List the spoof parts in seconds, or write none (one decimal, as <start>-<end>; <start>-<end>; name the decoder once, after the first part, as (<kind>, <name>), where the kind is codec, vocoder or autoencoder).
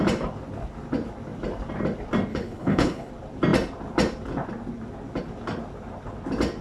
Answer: 2.3-3.1 (codec, HILCodec)